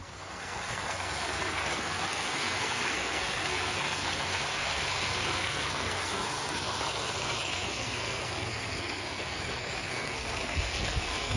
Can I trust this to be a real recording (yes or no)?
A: no